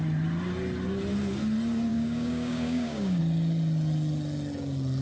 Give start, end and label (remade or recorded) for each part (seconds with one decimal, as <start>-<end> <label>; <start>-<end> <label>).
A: 0.0-1.9 recorded; 1.9-3.2 remade; 3.2-5.0 recorded